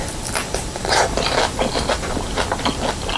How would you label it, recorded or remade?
remade